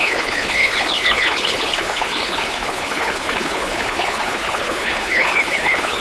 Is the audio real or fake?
fake